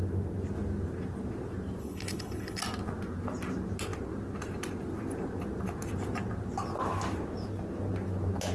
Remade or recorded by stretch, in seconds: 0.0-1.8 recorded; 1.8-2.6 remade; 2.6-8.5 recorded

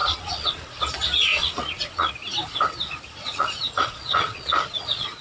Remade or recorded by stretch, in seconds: 0.0-0.8 remade; 0.8-1.3 recorded; 1.3-2.1 remade; 2.1-3.2 recorded; 3.2-5.2 remade

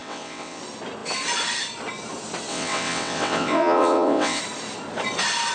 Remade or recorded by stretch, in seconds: 0.0-0.6 remade; 0.6-2.5 recorded; 2.5-4.4 remade; 4.4-5.5 recorded

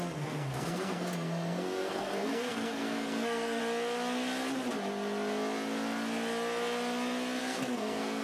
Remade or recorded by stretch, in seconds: 0.0-3.6 remade; 3.6-7.4 recorded; 7.4-8.2 remade